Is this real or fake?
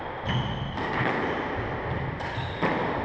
real